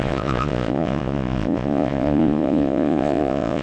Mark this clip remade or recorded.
remade